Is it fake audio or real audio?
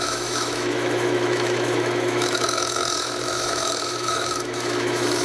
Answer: fake